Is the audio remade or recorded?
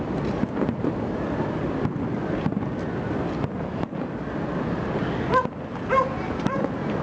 recorded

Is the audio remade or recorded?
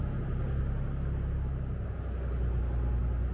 recorded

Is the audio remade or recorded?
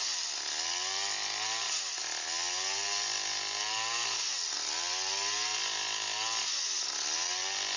recorded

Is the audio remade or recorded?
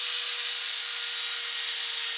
recorded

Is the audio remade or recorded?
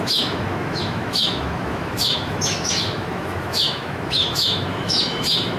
remade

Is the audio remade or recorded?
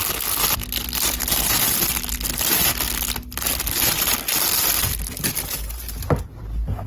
recorded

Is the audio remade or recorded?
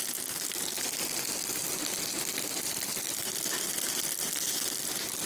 recorded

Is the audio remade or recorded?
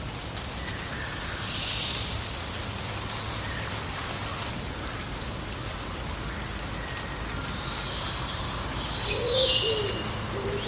recorded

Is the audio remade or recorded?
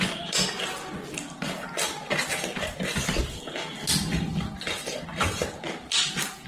recorded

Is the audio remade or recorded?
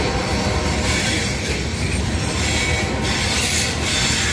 recorded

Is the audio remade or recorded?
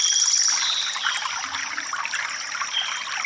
recorded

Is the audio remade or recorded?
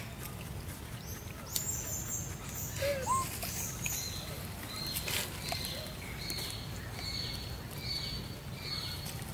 recorded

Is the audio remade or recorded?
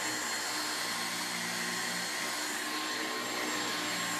recorded